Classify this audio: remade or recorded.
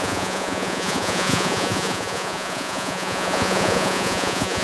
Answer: remade